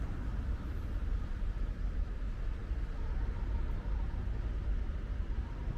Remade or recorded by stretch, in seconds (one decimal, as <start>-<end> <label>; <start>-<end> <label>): 0.0-1.0 recorded; 1.0-2.2 remade; 2.2-5.8 recorded